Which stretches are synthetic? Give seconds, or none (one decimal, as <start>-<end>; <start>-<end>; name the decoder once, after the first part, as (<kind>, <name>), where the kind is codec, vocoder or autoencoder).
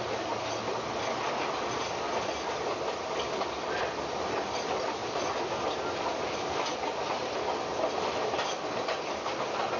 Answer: none